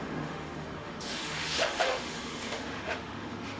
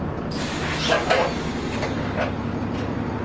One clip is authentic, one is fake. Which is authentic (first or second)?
second